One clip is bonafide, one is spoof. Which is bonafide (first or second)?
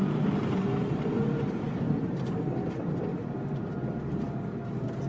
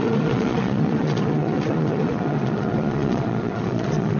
first